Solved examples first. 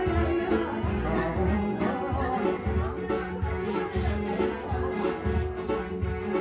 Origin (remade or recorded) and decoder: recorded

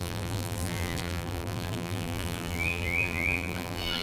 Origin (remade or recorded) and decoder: remade, vocoder, BigVGAN v2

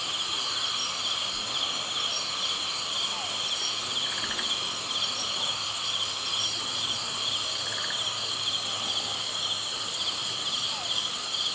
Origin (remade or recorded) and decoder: recorded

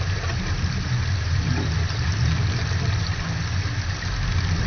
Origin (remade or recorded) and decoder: recorded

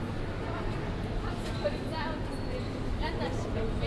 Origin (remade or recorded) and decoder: recorded